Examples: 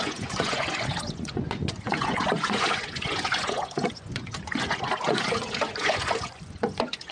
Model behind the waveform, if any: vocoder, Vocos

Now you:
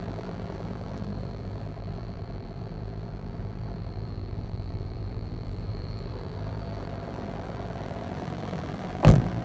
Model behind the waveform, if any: vocoder, BigVGAN v2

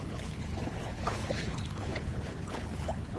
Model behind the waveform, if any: codec, HILCodec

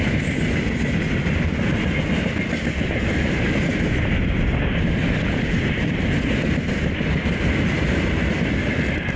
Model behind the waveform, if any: none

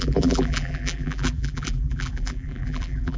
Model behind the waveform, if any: vocoder, BigVGAN v2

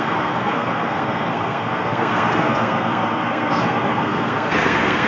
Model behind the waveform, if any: codec, SNAC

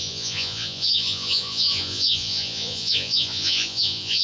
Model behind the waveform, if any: vocoder, Vocos